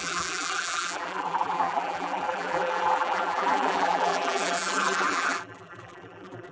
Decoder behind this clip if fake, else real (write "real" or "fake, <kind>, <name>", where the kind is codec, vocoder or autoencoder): fake, vocoder, BigVGAN v2